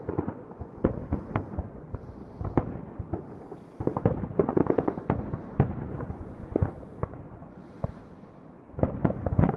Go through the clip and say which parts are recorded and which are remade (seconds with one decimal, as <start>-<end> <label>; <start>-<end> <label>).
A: 0.0-2.2 remade; 2.2-4.4 recorded; 4.4-9.6 remade